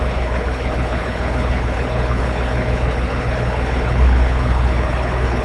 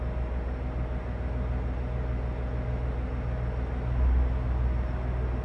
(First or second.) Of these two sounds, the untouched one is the second